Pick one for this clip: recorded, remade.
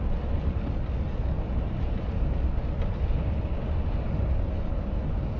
recorded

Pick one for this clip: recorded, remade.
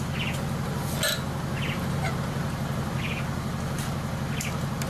recorded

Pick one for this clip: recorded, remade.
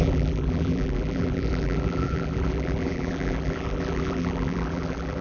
remade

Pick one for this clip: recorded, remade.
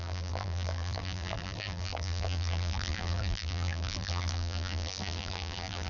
remade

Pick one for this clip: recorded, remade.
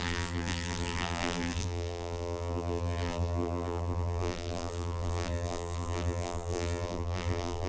remade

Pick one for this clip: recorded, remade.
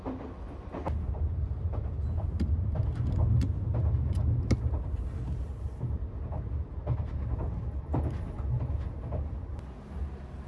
recorded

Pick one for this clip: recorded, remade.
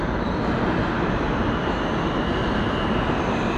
recorded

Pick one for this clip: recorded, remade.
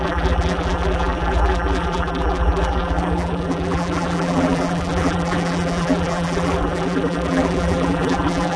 remade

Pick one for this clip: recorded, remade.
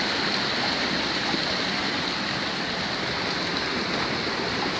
recorded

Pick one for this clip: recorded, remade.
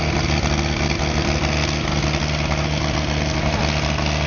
recorded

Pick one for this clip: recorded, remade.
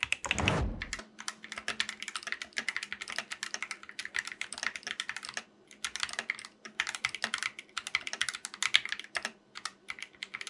recorded